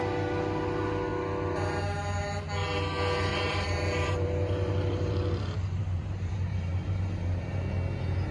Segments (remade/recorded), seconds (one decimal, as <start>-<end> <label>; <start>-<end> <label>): 0.0-3.3 recorded; 3.3-7.6 remade; 7.6-8.3 recorded